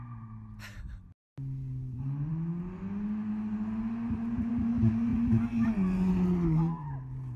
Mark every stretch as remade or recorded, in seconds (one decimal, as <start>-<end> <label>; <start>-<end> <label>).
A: 0.0-7.4 recorded